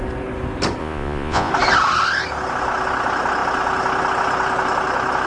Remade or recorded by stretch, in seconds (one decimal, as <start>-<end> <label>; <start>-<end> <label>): 0.0-0.8 recorded; 0.8-1.5 remade; 1.5-5.3 recorded